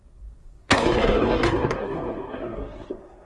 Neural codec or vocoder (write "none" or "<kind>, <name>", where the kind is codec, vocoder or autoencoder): codec, SNAC